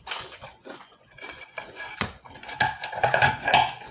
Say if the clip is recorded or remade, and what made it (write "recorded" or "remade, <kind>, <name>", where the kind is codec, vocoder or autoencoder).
remade, vocoder, Vocos